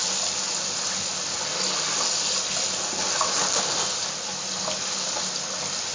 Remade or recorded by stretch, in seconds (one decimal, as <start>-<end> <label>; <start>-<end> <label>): 0.0-5.9 recorded